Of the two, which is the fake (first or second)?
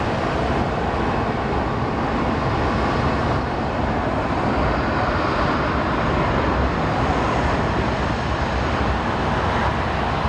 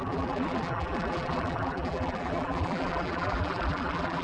second